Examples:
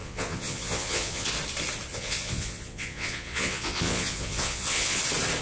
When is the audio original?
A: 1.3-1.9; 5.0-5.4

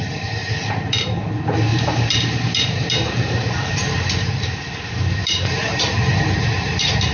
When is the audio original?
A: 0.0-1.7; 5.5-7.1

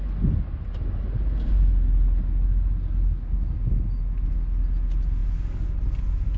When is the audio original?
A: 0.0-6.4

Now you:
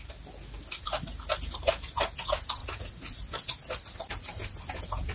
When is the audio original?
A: 0.0-2.6; 3.2-5.1

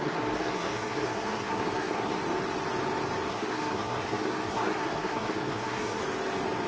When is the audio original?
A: 2.2-3.3; 6.0-6.7